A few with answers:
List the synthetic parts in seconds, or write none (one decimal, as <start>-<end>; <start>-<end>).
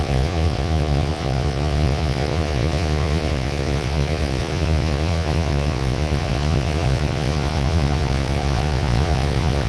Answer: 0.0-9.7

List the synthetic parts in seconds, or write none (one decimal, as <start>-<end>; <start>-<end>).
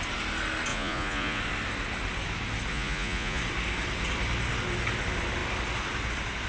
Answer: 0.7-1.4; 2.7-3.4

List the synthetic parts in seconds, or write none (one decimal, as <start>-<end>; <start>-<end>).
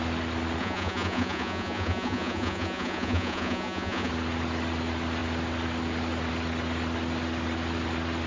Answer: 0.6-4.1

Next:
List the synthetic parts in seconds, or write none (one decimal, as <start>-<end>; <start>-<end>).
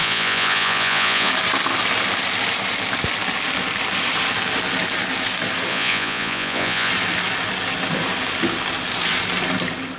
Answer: 0.0-1.3; 5.7-6.9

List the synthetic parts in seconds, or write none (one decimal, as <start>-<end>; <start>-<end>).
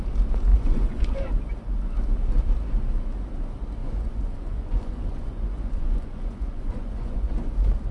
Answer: 0.5-1.3; 3.8-7.3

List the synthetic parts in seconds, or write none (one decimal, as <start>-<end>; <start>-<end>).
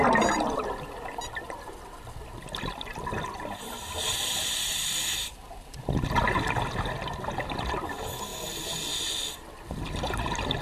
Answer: none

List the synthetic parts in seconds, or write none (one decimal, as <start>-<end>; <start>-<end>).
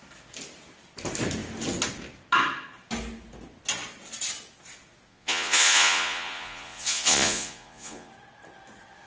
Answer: 5.1-8.1